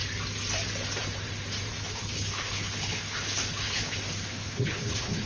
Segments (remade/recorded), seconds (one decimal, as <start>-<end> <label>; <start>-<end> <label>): 0.0-1.7 recorded; 1.7-5.3 remade